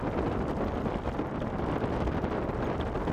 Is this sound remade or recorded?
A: recorded